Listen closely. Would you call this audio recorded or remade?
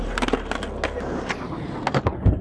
recorded